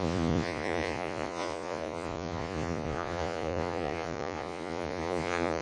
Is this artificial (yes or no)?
yes